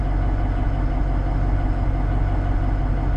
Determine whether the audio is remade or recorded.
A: recorded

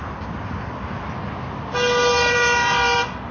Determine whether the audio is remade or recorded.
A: recorded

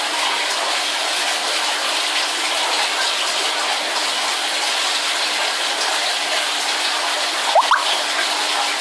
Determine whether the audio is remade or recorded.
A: recorded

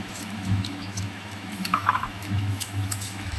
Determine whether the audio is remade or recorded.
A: remade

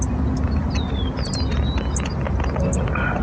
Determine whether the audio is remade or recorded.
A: recorded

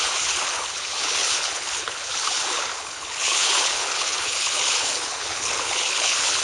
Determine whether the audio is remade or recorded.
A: remade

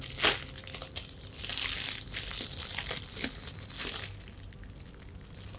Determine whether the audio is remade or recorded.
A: recorded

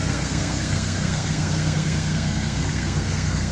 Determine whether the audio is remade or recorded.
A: remade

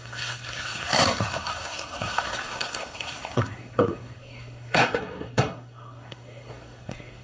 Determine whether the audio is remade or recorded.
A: remade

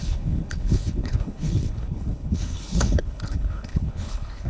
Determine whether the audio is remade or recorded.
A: remade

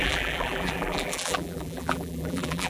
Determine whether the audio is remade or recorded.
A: remade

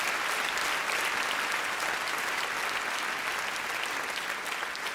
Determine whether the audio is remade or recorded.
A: recorded